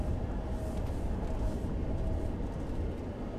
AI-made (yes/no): no